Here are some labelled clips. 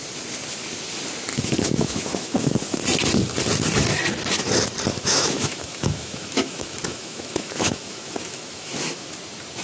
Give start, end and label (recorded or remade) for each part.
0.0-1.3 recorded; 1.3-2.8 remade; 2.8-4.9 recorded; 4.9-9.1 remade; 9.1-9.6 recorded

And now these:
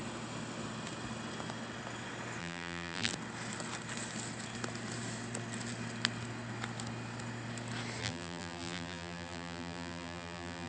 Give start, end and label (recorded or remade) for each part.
0.0-2.4 recorded; 2.4-3.1 remade; 3.1-8.0 recorded; 8.0-10.7 remade

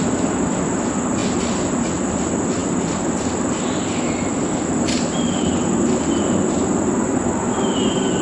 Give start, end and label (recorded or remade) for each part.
0.0-8.2 recorded

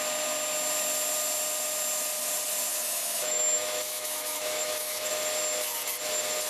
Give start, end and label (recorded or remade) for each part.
0.0-2.7 recorded; 2.7-5.1 remade; 5.1-6.5 recorded

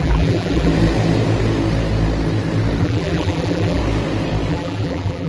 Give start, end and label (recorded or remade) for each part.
0.0-0.7 remade; 0.7-2.8 recorded; 2.8-3.8 remade; 3.8-4.5 recorded; 4.5-5.3 remade

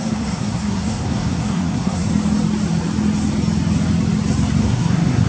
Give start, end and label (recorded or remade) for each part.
0.0-2.1 remade; 2.1-4.6 recorded; 4.6-5.3 remade